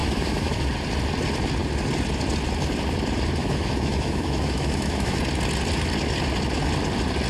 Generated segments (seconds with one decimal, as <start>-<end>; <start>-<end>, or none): 0.0-0.6; 3.4-5.2

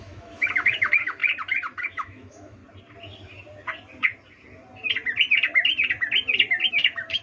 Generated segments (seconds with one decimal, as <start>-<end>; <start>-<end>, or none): 0.0-1.2; 1.8-2.6; 6.7-7.2

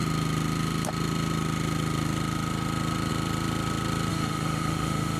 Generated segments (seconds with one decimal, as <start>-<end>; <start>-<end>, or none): 4.1-5.2

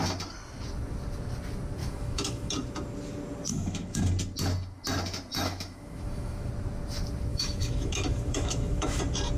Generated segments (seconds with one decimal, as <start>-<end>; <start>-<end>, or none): 1.8-2.5; 3.5-4.1; 5.3-6.5; 7.3-9.0

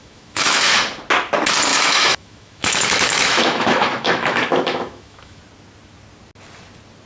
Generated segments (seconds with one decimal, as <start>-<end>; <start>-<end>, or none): 0.0-0.7; 1.7-5.4